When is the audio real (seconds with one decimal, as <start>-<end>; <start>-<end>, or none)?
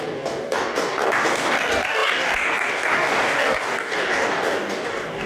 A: none